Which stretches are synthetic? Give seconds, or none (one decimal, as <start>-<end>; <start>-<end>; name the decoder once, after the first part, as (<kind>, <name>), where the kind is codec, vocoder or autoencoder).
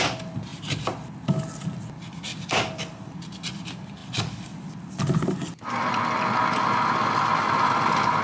2.3-3.3 (vocoder, BigVGAN v2); 4.0-5.9